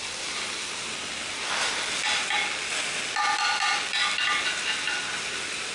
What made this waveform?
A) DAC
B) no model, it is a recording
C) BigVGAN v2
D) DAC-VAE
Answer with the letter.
B